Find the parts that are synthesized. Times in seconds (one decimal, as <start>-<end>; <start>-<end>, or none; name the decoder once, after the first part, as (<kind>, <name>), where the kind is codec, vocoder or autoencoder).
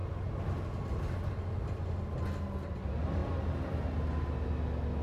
none